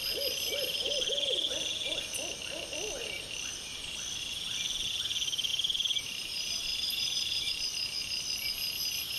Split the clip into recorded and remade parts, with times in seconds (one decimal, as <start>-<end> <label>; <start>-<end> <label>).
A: 0.0-5.5 recorded; 5.5-7.5 remade; 7.5-9.2 recorded